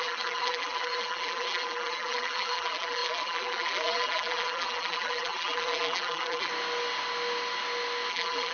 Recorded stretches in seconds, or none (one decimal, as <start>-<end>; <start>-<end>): 6.5-8.1